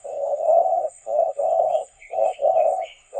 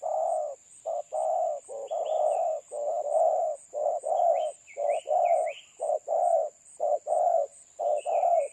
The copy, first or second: first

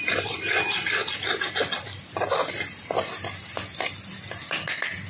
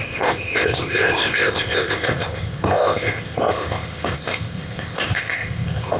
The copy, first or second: second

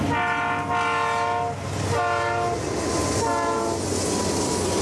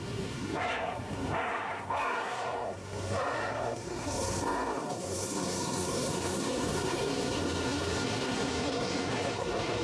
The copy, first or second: second